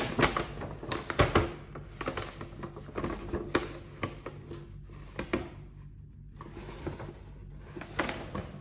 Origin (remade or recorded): recorded